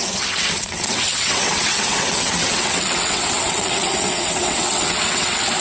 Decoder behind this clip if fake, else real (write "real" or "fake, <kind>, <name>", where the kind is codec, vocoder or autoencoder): fake, vocoder, WaveNeXt